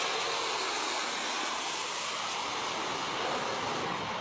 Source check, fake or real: real